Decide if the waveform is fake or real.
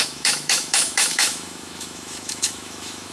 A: fake